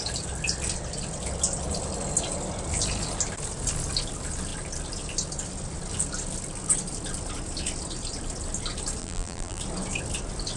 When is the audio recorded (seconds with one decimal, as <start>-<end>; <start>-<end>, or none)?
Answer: 0.0-9.0; 9.6-10.6